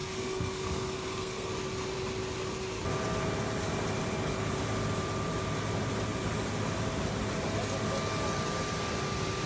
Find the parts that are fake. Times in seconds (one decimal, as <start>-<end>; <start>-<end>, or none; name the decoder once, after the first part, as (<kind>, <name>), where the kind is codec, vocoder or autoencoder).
0.0-1.5 (codec, SNAC)